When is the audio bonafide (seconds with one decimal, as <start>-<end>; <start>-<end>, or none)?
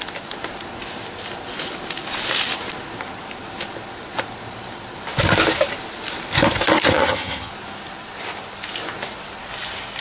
0.0-6.9; 7.5-10.0